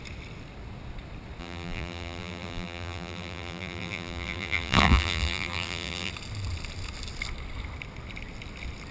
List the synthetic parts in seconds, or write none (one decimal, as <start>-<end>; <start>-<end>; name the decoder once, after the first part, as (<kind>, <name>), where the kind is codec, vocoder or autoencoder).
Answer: 1.4-6.1 (vocoder, BigVGAN v2)